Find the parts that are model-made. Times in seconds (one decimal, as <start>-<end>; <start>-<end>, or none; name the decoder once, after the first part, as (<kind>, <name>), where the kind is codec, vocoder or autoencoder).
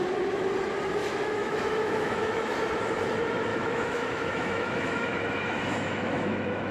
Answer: 1.0-2.4 (autoencoder, DAC-VAE); 3.5-6.7